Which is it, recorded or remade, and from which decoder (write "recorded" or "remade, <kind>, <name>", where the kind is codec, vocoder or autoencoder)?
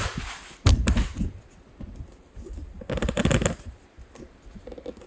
recorded